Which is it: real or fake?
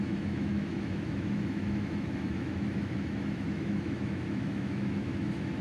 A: fake